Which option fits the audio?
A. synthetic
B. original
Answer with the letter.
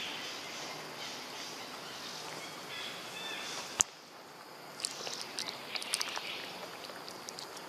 B